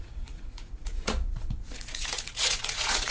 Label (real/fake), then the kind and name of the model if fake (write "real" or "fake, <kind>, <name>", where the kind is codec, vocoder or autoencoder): fake, vocoder, Vocos